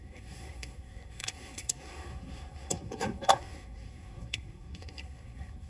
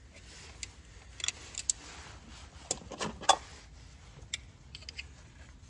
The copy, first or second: first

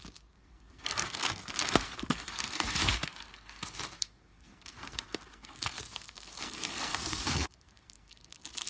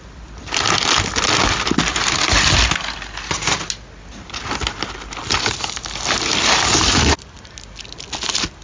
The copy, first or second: first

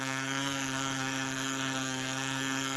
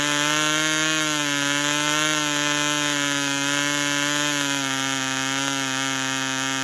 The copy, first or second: first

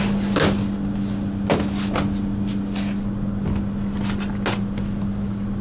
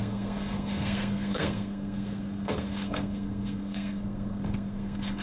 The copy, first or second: second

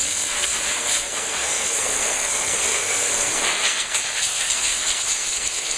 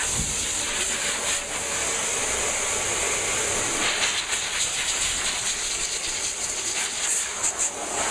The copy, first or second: first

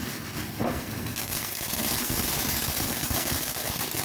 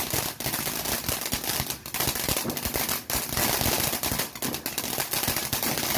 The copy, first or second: first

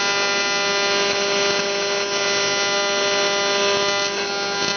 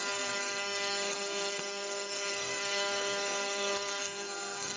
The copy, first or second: second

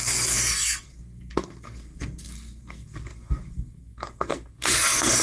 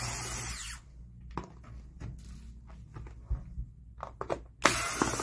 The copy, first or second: first